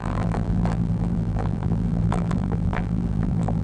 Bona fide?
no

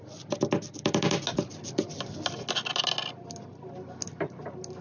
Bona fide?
yes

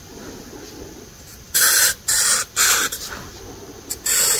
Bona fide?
yes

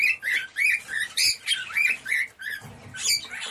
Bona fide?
yes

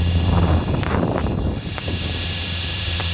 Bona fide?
no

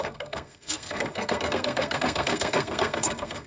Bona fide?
no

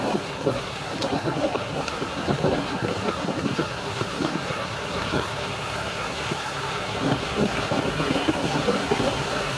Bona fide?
no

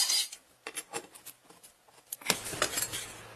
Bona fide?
yes